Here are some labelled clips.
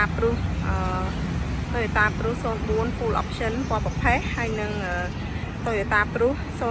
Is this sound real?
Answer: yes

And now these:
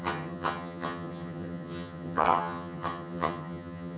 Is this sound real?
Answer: no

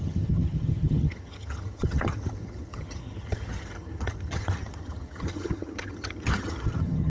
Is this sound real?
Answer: no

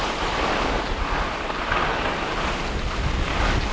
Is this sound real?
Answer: yes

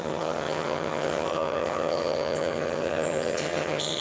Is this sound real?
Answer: no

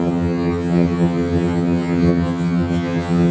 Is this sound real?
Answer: no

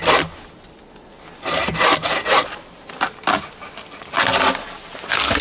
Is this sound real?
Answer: yes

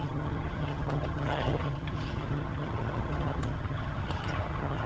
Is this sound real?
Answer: no